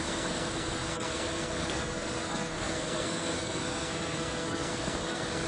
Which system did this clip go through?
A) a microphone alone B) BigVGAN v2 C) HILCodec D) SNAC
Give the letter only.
D